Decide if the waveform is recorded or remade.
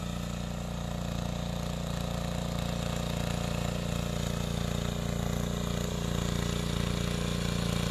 recorded